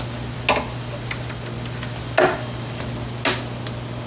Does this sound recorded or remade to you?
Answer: recorded